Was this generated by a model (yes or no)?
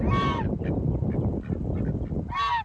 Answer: no